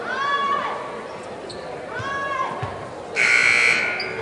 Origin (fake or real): real